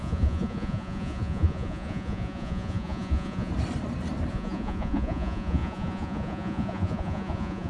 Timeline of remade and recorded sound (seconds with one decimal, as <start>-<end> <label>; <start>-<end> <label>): 0.0-3.5 remade; 3.5-4.3 recorded; 4.3-7.7 remade